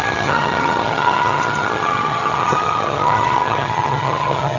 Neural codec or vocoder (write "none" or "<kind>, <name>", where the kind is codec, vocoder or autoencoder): vocoder, HiFi-GAN